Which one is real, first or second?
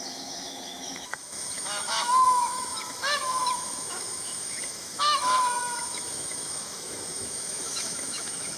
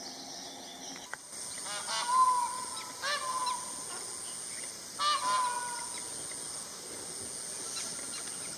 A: second